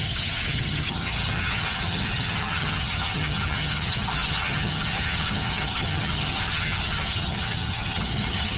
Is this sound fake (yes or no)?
yes